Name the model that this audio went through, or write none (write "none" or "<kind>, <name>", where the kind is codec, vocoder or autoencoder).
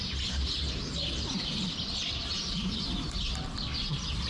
vocoder, BigVGAN v2